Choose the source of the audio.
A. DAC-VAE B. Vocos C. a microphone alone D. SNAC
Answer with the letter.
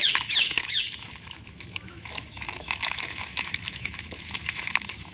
A